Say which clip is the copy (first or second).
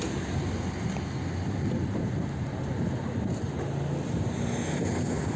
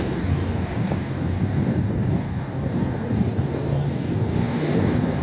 second